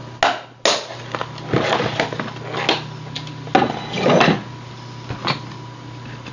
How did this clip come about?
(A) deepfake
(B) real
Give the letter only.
B